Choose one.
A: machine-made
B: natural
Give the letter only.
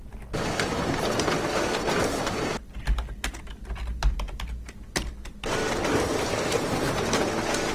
B